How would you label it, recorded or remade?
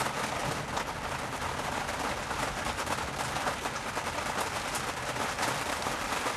recorded